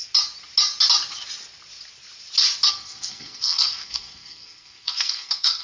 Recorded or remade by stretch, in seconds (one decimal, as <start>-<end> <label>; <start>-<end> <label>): 0.0-2.7 recorded; 2.7-5.6 remade